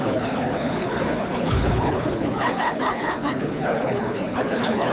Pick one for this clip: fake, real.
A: fake